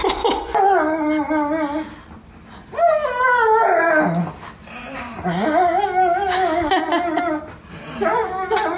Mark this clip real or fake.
real